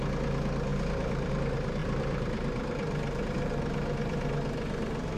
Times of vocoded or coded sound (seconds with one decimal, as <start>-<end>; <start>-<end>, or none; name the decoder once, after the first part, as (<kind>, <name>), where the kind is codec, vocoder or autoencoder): 0.7-1.3 (vocoder, BigVGAN v2); 1.8-5.2